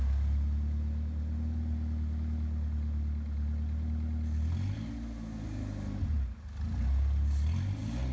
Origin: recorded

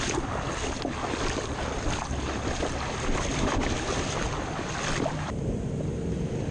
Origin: recorded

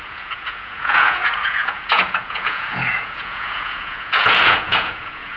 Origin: remade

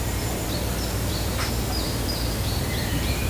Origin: remade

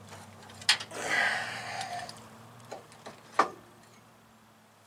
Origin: recorded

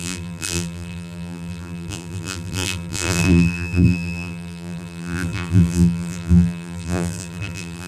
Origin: remade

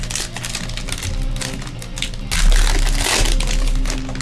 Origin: recorded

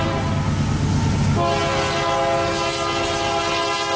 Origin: recorded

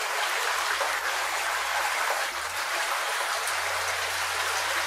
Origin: recorded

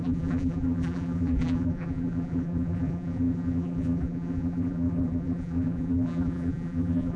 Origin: remade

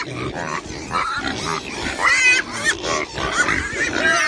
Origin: recorded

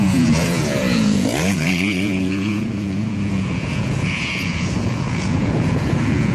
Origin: remade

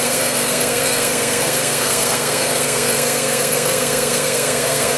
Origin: remade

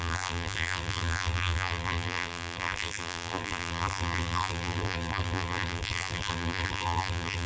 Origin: remade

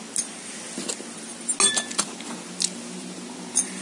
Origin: recorded